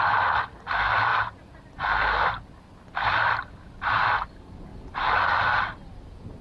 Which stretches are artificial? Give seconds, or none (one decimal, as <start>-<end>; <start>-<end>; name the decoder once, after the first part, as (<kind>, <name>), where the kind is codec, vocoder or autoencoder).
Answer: none